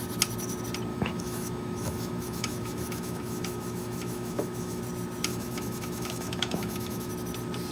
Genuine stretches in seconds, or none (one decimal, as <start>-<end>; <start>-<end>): 0.0-0.9; 4.8-5.3; 7.1-7.7